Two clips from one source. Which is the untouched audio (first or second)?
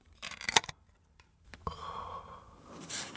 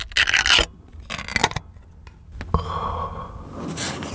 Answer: second